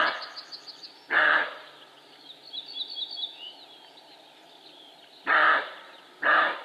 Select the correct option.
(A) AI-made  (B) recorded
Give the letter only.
B